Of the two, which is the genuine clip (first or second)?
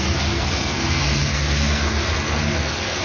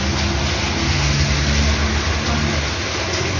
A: second